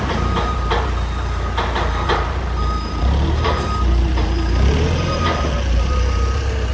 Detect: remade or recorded remade